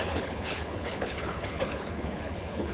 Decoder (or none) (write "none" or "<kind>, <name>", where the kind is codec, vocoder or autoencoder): codec, HILCodec